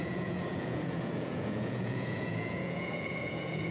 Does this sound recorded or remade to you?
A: remade